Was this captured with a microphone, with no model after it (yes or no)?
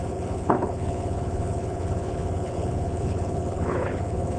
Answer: no